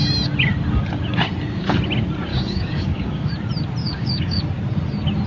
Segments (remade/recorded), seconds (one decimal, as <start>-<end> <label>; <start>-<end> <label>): 0.0-2.3 recorded; 2.3-3.3 remade; 3.3-3.8 recorded; 3.8-4.4 remade; 4.4-5.3 recorded